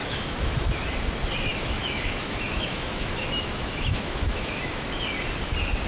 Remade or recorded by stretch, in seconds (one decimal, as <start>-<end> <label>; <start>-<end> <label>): 0.0-0.7 remade; 0.7-1.5 recorded; 1.5-5.0 remade; 5.0-5.9 recorded